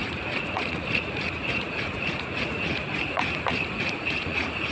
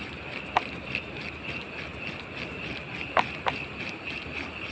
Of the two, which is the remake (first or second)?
first